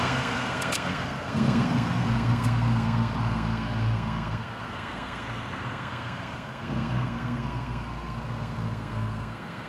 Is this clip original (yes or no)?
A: no